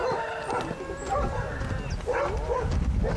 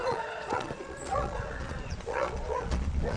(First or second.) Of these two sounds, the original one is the first